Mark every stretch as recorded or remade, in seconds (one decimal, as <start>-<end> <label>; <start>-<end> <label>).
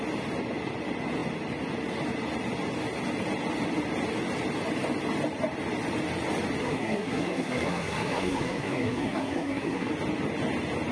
0.0-6.6 recorded; 6.6-9.9 remade; 9.9-10.9 recorded